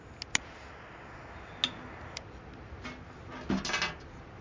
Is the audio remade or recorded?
recorded